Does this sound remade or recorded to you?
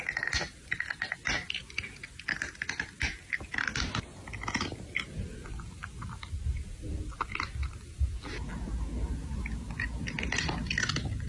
recorded